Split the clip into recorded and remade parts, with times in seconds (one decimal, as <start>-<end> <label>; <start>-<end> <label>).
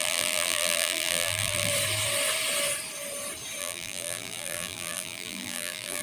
0.0-1.7 remade; 1.7-3.6 recorded; 3.6-6.0 remade